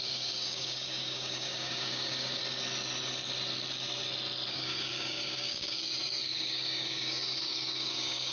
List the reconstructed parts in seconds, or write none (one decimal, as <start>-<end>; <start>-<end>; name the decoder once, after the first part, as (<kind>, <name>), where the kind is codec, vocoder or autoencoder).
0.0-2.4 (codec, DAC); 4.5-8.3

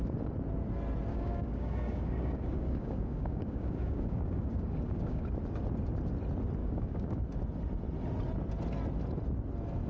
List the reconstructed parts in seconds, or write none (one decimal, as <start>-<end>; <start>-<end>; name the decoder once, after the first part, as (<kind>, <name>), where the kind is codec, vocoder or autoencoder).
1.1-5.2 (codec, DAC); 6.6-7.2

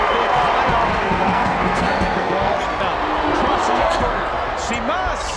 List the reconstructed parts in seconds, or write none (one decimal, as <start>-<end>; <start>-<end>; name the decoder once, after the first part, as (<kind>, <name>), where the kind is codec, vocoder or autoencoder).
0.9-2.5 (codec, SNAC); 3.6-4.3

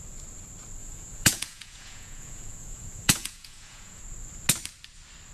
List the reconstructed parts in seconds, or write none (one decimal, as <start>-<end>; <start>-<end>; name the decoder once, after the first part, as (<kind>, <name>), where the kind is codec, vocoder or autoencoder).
0.8-4.0 (vocoder, Vocos)

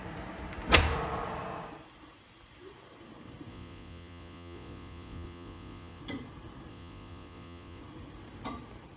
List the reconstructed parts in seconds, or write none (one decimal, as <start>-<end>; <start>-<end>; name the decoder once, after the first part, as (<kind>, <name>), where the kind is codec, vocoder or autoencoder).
3.5-6.0 (vocoder, Vocos); 6.7-7.8

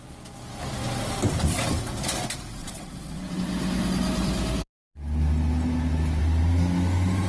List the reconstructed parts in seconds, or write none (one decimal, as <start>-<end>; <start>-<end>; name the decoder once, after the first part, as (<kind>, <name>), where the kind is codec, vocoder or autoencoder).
2.6-3.4 (vocoder, WaveNeXt)

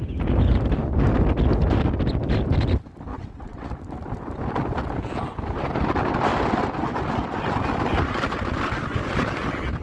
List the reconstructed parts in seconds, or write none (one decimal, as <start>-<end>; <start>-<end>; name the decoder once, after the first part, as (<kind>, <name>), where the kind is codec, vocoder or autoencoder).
3.1-3.7 (vocoder, WaveNeXt)